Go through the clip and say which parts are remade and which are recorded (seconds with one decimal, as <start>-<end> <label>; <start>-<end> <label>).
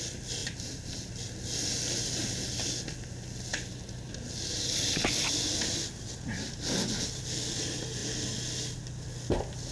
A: 0.0-0.4 recorded; 0.4-1.1 remade; 1.1-9.7 recorded